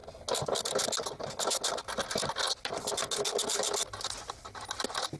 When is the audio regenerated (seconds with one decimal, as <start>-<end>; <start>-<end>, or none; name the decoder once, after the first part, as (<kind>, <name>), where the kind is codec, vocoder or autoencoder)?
none